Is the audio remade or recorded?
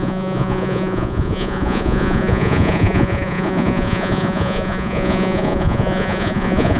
remade